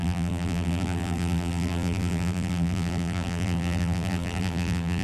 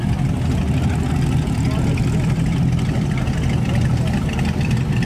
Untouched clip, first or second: second